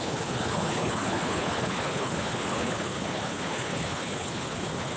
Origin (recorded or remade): remade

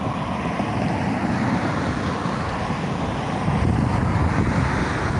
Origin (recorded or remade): recorded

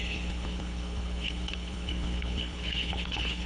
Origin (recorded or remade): remade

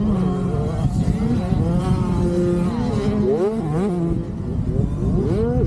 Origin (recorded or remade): recorded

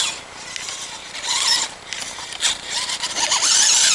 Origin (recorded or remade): recorded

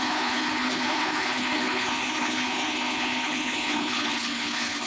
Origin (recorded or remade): remade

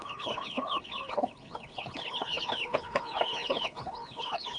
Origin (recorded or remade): remade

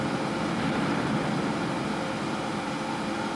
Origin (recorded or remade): recorded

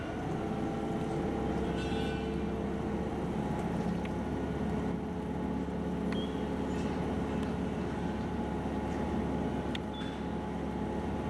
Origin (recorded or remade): recorded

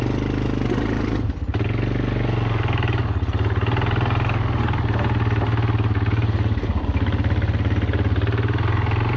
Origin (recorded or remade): recorded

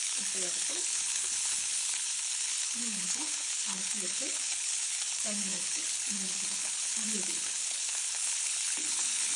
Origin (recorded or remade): remade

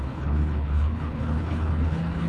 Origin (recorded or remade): remade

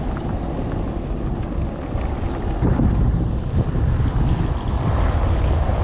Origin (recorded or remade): recorded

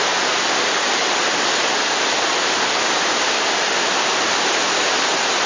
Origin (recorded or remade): recorded